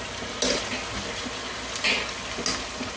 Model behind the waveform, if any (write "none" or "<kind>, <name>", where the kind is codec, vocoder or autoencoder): none